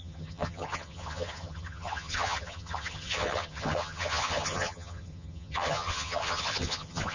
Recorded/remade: remade